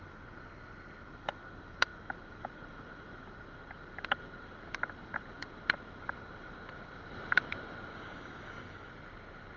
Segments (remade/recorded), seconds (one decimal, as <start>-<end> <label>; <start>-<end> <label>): 0.0-7.9 recorded; 7.9-8.9 remade; 8.9-9.6 recorded